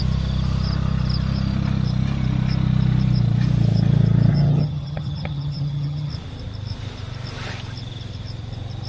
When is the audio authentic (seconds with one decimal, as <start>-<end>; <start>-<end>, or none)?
0.0-4.3; 6.1-8.9